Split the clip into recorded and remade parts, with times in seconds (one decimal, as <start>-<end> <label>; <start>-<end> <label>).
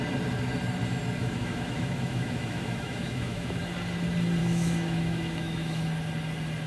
0.0-1.2 recorded; 1.2-3.6 remade; 3.6-4.4 recorded; 4.4-5.8 remade; 5.8-6.7 recorded